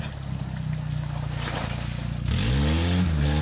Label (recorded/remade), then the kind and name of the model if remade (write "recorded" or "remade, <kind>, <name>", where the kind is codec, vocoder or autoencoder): recorded